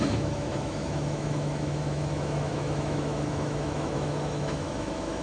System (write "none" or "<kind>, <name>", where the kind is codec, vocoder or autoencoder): autoencoder, DAC-VAE